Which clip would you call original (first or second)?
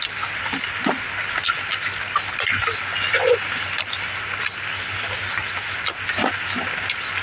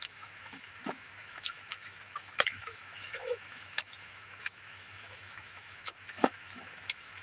first